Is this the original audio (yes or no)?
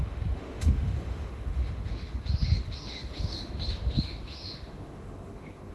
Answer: no